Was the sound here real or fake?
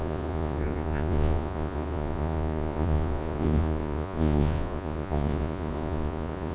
fake